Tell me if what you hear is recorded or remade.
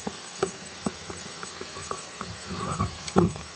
remade